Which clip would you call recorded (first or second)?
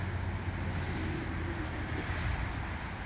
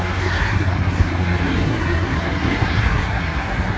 first